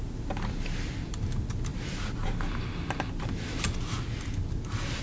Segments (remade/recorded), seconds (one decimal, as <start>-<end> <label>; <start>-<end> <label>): 0.0-5.0 recorded